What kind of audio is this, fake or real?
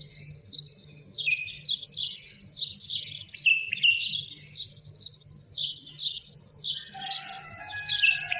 real